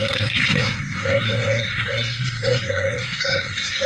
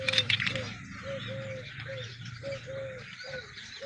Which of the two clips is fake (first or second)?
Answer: first